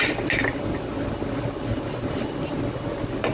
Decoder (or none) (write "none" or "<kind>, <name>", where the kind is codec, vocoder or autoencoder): none